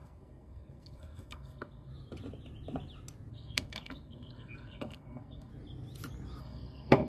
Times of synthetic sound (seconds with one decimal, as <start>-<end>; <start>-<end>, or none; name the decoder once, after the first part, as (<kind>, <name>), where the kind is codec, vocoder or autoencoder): 0.0-1.9 (codec, SNAC); 3.3-5.5; 6.4-7.1

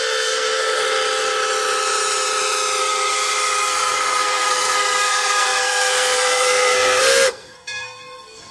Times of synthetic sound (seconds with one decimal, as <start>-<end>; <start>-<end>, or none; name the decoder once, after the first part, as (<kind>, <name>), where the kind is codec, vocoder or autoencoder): 0.0-0.8 (codec, SNAC); 2.8-8.5

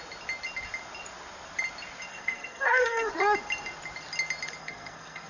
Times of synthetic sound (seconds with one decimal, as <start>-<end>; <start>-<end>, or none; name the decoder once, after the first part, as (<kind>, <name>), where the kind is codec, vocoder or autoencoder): 2.1-3.1 (codec, SNAC); 4.6-5.3

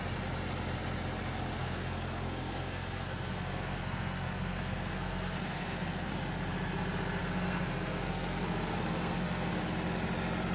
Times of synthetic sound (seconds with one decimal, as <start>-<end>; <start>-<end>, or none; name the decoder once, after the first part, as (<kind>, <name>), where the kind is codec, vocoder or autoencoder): 1.6-6.1 (codec, SNAC); 7.2-9.5

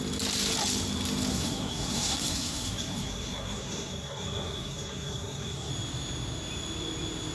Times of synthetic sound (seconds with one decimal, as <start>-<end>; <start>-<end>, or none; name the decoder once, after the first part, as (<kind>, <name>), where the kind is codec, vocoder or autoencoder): 1.3-5.7 (codec, SNAC)

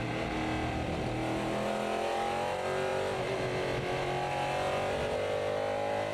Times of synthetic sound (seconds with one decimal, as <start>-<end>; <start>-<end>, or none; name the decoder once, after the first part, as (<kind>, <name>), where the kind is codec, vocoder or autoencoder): none

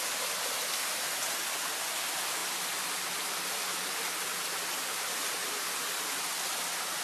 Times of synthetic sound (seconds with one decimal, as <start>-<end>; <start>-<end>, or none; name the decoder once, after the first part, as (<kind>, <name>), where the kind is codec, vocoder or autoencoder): none

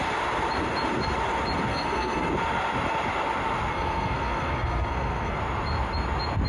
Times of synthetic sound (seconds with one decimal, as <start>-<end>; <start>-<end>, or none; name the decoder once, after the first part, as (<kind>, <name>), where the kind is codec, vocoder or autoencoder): 1.7-2.3 (codec, SNAC); 3.7-5.4